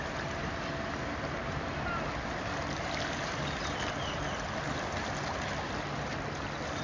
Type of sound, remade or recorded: recorded